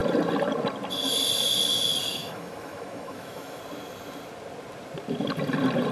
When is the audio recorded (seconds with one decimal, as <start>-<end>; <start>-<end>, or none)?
0.0-2.1; 3.6-5.9